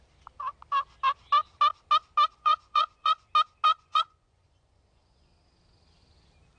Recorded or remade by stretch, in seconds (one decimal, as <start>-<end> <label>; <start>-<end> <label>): 0.0-2.3 recorded; 2.3-3.2 remade; 3.2-3.7 recorded; 3.7-5.3 remade; 5.3-6.6 recorded